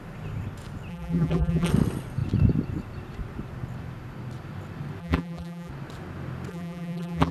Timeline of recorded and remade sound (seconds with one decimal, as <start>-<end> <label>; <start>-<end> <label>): 0.0-0.9 recorded; 0.9-1.7 remade; 1.7-5.0 recorded; 5.0-5.7 remade; 5.7-6.5 recorded; 6.5-7.3 remade